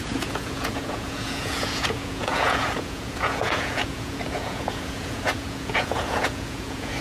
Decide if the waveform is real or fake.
fake